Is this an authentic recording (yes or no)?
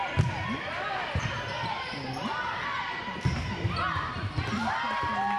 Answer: yes